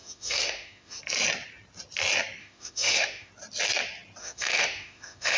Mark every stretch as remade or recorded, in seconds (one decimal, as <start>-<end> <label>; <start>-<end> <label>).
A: 0.0-1.0 remade; 1.0-2.4 recorded; 2.4-3.3 remade; 3.3-4.2 recorded; 4.2-5.4 remade